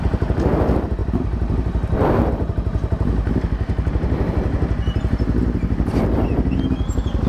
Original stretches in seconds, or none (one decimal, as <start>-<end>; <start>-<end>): 0.0-7.3